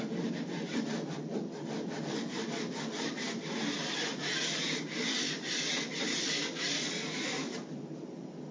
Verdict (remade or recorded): recorded